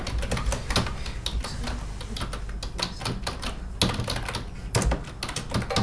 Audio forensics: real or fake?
real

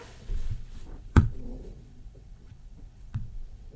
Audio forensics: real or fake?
fake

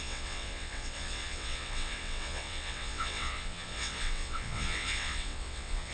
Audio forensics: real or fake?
fake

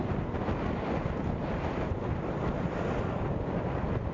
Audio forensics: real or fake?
real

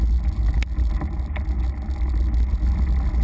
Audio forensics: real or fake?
real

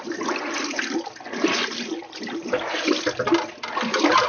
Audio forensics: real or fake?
real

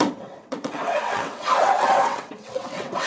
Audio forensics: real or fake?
fake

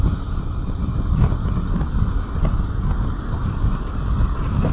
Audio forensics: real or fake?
real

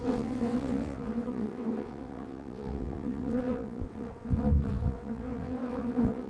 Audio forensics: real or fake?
fake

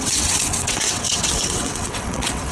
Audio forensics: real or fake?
fake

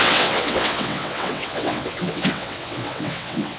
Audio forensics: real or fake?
fake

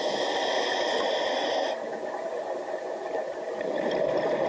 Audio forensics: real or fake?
real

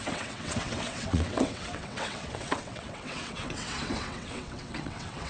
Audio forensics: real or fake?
fake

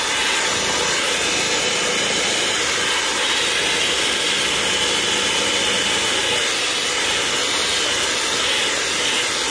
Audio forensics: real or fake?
real